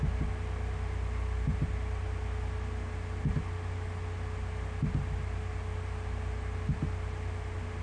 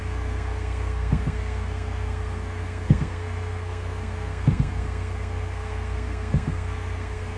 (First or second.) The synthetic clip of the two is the second